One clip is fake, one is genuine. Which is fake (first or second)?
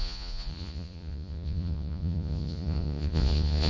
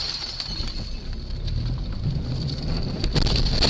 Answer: first